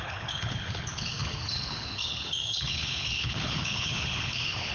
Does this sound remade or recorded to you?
remade